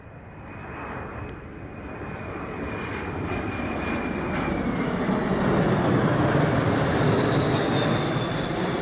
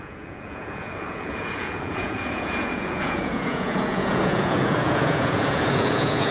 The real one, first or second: first